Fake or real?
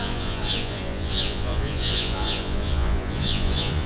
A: fake